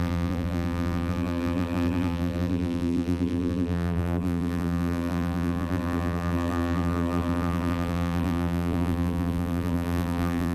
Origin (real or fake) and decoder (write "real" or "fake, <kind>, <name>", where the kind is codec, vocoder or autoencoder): fake, vocoder, BigVGAN v2